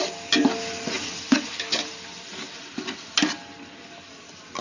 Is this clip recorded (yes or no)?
yes